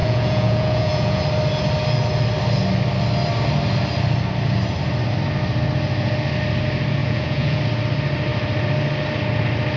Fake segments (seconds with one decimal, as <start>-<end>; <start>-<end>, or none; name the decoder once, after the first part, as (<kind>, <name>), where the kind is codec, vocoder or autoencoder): 0.0-1.2 (vocoder, Vocos); 7.0-7.6